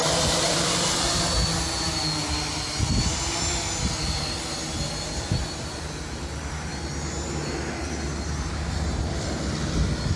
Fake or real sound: real